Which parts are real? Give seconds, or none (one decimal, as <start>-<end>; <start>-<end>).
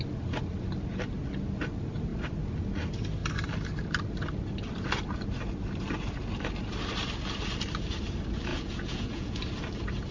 0.0-8.5; 9.4-10.1